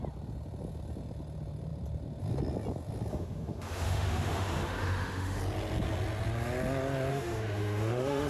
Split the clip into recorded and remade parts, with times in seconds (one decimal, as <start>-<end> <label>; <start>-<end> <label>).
0.0-3.1 recorded; 3.1-5.4 remade; 5.4-7.1 recorded; 7.1-8.3 remade